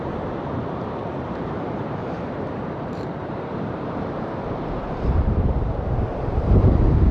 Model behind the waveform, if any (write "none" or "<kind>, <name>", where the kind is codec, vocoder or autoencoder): vocoder, BigVGAN v2